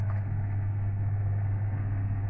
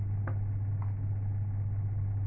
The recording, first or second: second